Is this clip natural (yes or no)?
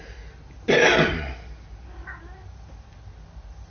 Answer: yes